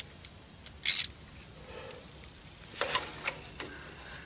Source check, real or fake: real